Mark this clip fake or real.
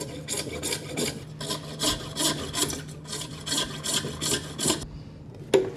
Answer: real